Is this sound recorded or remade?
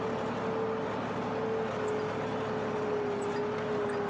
recorded